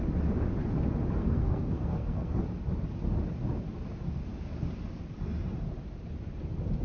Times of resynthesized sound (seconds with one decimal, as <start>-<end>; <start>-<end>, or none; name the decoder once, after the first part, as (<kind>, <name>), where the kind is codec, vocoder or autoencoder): 1.2-2.4 (codec, SNAC)